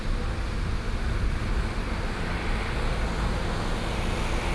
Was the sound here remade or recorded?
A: recorded